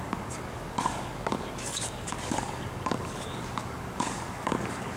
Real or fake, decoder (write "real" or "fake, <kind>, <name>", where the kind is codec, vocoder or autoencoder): fake, codec, DAC